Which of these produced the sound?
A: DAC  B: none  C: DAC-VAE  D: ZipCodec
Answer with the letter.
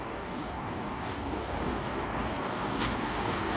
A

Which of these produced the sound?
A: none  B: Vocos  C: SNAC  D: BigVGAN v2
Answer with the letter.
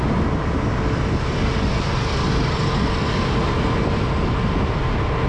A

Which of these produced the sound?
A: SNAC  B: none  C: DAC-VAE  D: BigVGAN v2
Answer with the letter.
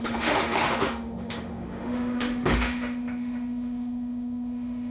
C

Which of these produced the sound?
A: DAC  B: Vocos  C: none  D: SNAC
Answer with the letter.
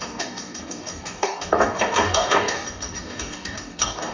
A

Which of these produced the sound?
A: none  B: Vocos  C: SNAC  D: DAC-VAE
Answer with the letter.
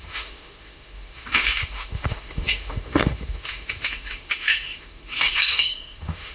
D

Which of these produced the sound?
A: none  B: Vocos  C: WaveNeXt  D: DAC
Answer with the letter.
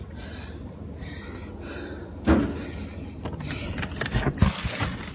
A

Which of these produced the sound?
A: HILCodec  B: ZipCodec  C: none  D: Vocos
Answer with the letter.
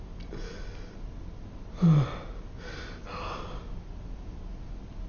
C